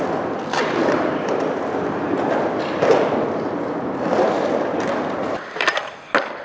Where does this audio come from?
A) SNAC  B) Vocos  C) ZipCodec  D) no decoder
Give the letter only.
D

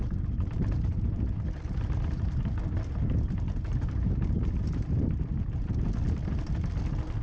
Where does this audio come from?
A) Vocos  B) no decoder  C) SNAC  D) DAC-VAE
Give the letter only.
B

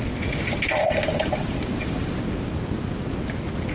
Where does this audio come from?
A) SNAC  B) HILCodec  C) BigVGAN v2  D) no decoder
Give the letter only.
D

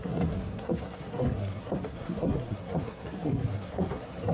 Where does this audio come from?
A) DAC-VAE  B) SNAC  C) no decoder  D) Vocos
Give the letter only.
B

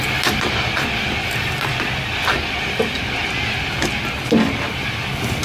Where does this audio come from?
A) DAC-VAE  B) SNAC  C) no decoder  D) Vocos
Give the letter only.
C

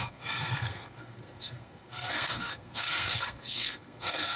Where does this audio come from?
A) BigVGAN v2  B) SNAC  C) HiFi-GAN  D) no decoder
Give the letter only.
B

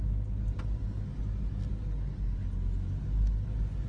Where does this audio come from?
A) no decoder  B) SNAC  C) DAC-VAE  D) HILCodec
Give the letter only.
A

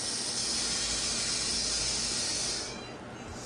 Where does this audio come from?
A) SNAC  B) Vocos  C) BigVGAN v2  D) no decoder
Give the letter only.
D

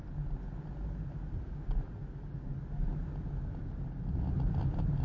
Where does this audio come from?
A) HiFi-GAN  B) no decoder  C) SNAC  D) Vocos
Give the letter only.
B